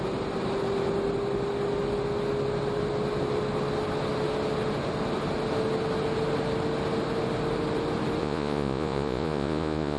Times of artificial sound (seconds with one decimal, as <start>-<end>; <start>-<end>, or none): 8.2-10.0